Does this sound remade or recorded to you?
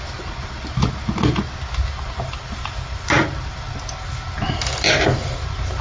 recorded